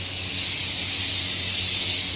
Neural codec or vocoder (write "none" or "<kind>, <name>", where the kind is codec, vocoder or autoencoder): none